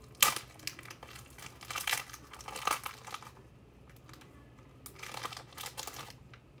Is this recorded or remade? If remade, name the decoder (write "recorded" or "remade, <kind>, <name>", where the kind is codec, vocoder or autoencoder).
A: recorded